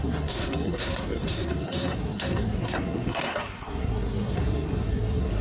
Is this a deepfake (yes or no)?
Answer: yes